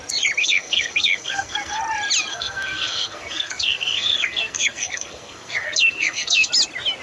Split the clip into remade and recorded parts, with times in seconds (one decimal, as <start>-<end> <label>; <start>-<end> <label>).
0.0-0.4 recorded; 0.4-1.8 remade; 1.8-2.3 recorded; 2.3-6.5 remade; 6.5-7.0 recorded